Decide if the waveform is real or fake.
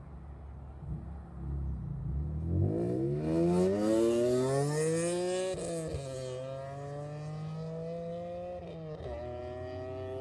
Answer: real